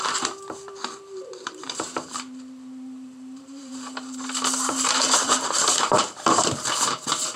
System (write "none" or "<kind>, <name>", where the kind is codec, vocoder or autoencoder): vocoder, BigVGAN v2